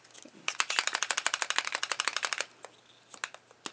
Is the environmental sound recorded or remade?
recorded